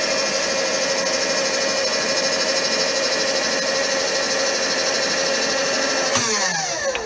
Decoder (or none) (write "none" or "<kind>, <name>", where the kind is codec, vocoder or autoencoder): none